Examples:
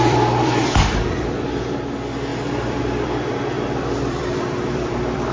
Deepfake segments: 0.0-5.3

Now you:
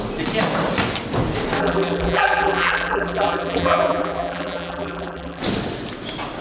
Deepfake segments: 1.6-5.4

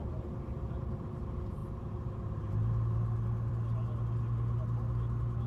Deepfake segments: none

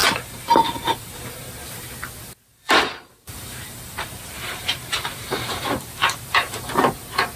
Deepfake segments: 0.0-1.8; 2.5-6.9

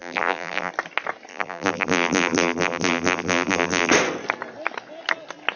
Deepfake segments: 0.0-0.7; 1.3-3.9